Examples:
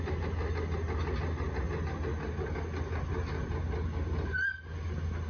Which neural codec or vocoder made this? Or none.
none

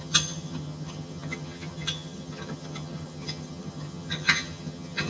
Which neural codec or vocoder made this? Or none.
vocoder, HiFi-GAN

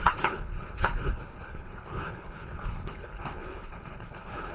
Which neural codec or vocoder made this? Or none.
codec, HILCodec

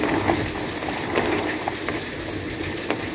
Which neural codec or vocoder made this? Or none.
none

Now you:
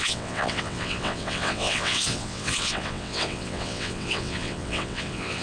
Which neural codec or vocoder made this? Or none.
vocoder, WaveNeXt